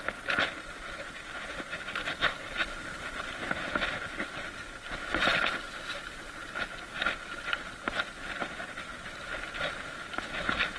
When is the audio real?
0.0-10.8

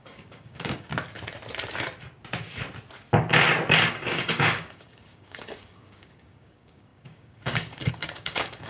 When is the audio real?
0.9-3.9